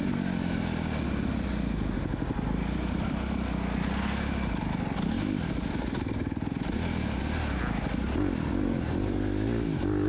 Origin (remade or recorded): recorded